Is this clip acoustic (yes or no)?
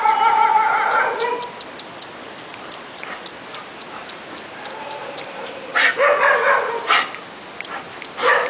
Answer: yes